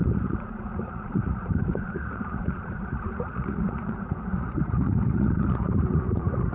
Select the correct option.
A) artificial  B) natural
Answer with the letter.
A